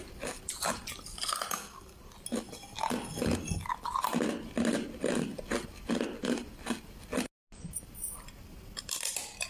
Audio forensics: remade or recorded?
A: recorded